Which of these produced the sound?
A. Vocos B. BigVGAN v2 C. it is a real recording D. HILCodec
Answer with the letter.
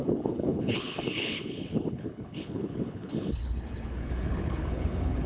D